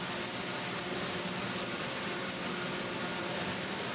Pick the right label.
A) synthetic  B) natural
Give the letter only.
B